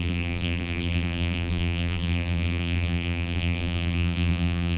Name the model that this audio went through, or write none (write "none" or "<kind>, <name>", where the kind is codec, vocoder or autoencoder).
vocoder, BigVGAN v2